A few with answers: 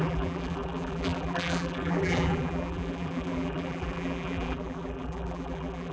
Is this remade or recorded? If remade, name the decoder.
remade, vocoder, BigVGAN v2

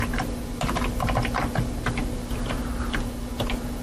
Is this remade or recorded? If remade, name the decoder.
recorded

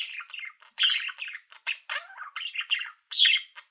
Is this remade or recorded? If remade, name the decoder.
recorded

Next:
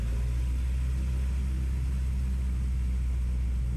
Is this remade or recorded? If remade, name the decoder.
recorded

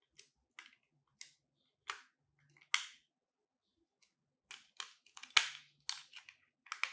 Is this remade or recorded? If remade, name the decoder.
recorded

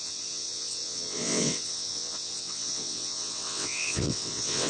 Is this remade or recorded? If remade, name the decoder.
remade, vocoder, WaveNeXt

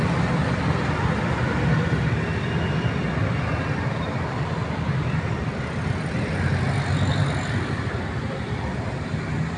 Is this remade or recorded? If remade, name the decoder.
recorded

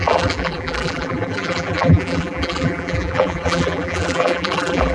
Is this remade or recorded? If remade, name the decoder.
remade, vocoder, BigVGAN v2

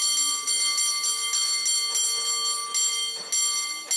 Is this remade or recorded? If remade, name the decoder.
recorded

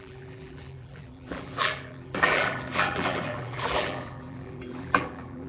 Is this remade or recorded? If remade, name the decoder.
remade, vocoder, BigVGAN v2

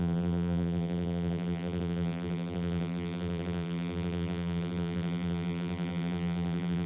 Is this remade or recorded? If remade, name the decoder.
remade, vocoder, BigVGAN v2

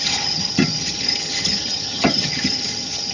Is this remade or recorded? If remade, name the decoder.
remade, vocoder, HiFi-GAN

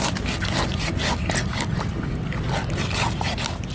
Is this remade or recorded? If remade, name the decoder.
recorded